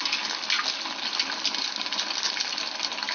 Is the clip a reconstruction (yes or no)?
no